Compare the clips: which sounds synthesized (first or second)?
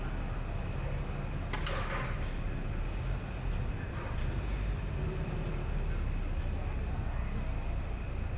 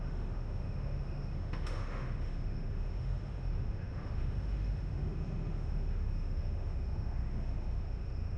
second